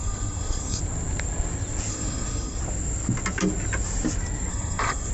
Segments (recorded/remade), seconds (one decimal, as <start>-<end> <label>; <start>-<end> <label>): 0.0-0.8 remade; 0.8-1.9 recorded; 1.9-2.6 remade; 2.6-4.5 recorded; 4.5-5.1 remade